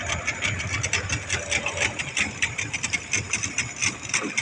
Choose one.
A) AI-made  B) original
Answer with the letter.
B